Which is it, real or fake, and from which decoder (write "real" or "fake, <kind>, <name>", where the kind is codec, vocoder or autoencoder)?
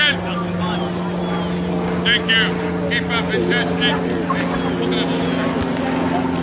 real